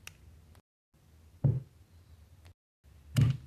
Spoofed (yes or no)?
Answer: no